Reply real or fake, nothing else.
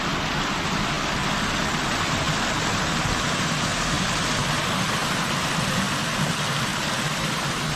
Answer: real